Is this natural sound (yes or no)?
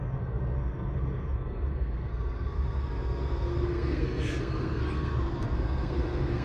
no